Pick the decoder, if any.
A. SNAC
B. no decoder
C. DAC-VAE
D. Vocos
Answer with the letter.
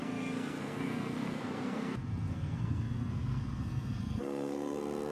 A